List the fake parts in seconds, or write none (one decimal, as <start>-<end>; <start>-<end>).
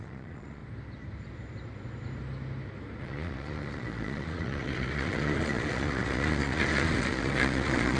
0.0-0.6; 3.0-8.0